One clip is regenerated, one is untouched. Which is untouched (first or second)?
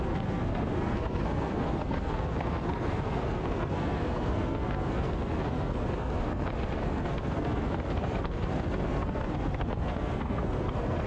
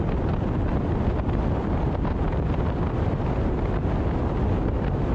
second